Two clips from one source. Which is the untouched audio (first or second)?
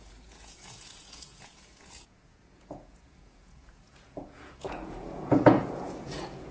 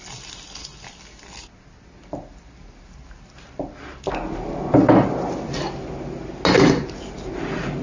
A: second